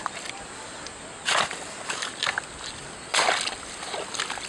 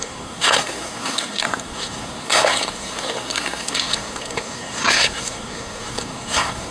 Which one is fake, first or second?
second